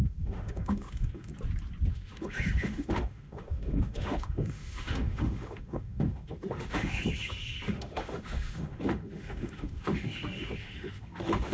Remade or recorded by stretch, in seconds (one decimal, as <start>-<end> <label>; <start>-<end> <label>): 0.0-1.3 remade; 1.3-1.9 recorded; 1.9-11.5 remade